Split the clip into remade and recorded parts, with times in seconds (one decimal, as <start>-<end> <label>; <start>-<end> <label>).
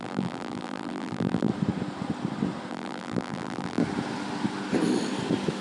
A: 0.0-1.5 remade; 1.5-2.7 recorded; 2.7-3.8 remade; 3.8-5.6 recorded